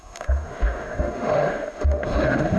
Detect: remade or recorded remade